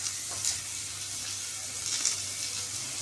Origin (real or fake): real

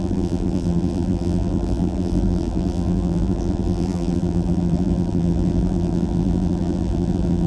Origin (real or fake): fake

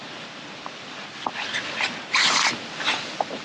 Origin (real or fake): real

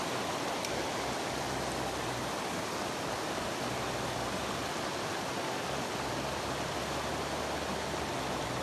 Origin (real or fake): real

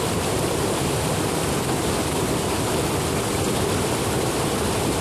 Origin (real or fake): real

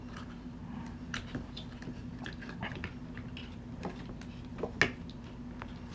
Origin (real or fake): real